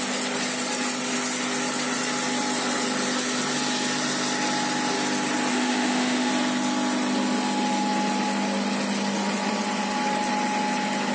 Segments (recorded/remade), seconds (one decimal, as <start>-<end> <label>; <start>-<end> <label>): 0.0-5.5 recorded; 5.5-6.3 remade; 6.3-11.1 recorded